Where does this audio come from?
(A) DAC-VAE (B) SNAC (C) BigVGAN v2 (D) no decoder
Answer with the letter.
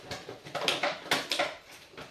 D